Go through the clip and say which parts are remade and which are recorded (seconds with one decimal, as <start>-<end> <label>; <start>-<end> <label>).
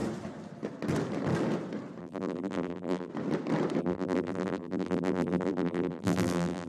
0.0-2.0 recorded; 2.0-3.1 remade; 3.1-3.8 recorded; 3.8-6.7 remade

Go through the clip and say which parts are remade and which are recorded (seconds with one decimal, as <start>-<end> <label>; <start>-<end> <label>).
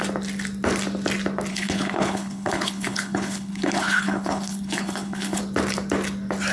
0.0-1.5 recorded; 1.5-5.4 remade; 5.4-6.5 recorded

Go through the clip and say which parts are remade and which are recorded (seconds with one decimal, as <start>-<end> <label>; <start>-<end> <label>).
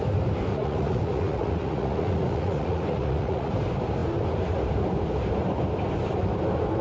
0.0-0.5 recorded; 0.5-3.5 remade; 3.5-6.8 recorded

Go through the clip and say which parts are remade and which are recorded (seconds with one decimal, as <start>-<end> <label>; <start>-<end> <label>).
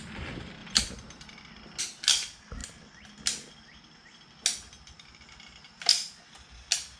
0.0-0.6 recorded; 0.6-1.8 remade; 1.8-7.0 recorded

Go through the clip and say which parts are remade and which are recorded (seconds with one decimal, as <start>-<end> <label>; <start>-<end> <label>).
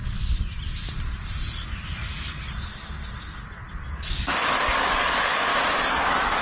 0.0-3.8 recorded; 3.8-5.5 remade; 5.5-6.0 recorded; 6.0-6.4 remade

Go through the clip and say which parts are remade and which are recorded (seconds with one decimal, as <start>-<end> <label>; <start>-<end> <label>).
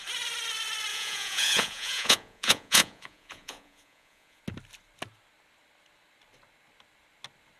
0.0-0.9 recorded; 0.9-4.4 remade; 4.4-7.6 recorded